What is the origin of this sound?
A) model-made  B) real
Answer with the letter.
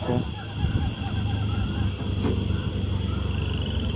B